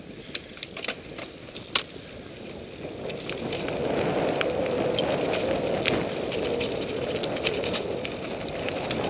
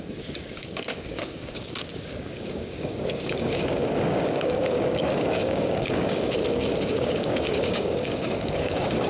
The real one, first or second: first